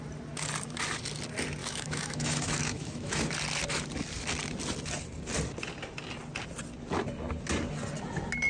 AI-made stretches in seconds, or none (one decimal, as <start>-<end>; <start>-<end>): 1.6-3.3